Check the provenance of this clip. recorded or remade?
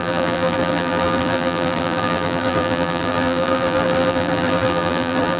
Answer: remade